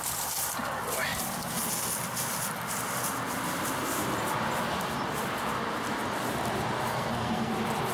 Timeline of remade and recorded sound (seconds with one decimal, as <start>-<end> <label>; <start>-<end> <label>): 0.0-6.9 recorded; 6.9-7.5 remade; 7.5-7.9 recorded